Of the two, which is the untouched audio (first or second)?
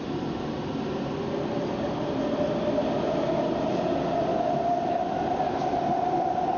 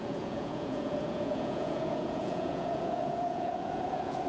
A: first